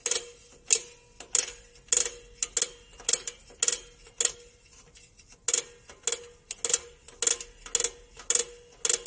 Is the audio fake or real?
real